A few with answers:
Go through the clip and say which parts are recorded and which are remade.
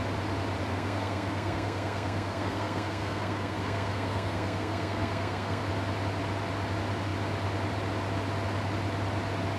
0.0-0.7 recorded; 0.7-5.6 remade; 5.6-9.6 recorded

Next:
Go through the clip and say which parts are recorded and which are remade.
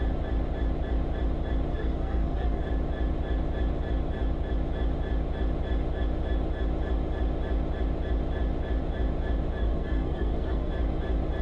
0.0-1.7 recorded; 1.7-2.6 remade; 2.6-9.6 recorded; 9.6-10.7 remade; 10.7-11.4 recorded